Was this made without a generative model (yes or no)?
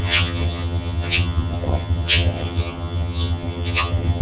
no